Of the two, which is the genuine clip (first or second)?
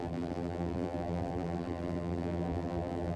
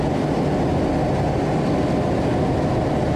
second